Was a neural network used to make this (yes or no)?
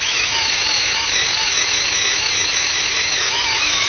yes